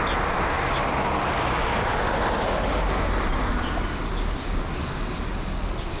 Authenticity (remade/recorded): recorded